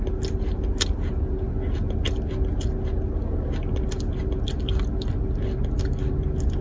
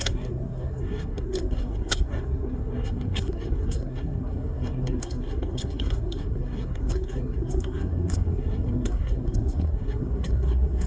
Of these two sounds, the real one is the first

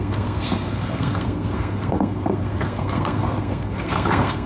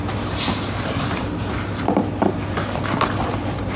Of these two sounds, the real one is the second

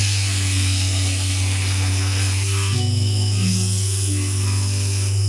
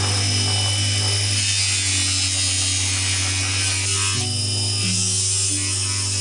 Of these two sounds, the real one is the second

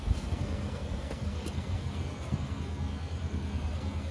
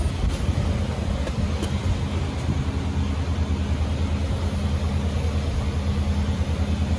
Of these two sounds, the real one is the second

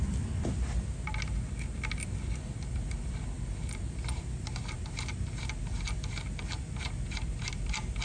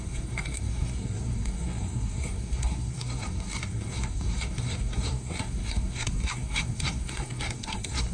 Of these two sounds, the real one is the first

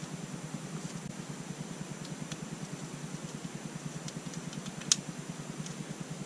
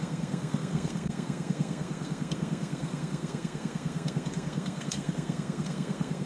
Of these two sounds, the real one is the first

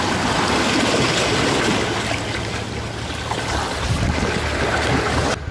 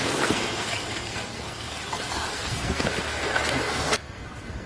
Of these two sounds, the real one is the first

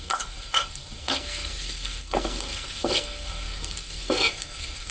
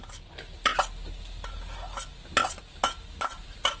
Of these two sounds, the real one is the second